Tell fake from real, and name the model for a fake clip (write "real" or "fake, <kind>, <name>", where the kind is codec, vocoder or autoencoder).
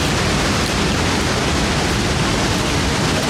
real